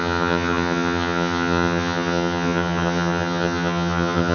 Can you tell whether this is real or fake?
fake